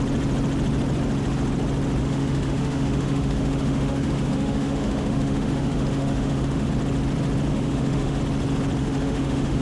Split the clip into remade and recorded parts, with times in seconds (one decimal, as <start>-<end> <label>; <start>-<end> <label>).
0.0-2.0 recorded; 2.0-6.7 remade; 6.7-7.5 recorded; 7.5-8.2 remade; 8.2-8.8 recorded; 8.8-9.6 remade